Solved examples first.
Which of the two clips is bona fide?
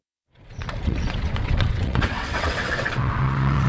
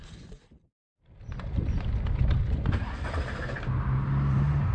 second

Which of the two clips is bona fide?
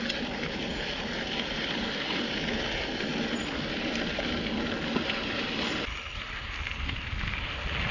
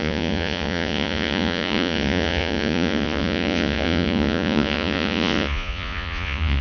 first